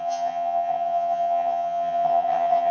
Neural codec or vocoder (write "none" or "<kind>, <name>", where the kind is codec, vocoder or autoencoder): vocoder, HiFi-GAN